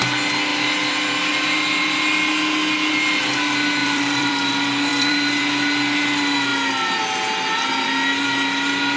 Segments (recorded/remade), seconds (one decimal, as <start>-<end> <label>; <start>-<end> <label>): 0.0-0.5 recorded; 0.5-2.0 remade; 2.0-3.8 recorded; 3.8-4.5 remade; 4.5-4.9 recorded; 4.9-5.4 remade; 5.4-9.0 recorded